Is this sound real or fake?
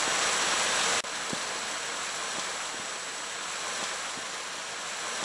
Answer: real